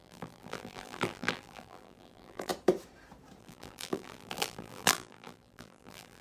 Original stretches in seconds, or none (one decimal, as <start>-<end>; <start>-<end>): 2.5-3.4